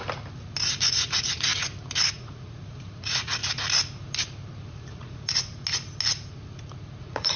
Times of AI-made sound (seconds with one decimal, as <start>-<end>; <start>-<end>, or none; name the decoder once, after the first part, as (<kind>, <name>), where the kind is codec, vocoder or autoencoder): 0.9-1.5 (vocoder, Vocos); 2.1-3.4; 4.7-5.5; 7.0-7.4